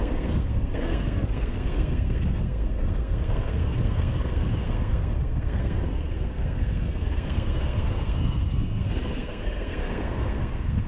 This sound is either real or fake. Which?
fake